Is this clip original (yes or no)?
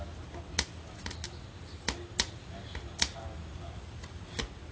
yes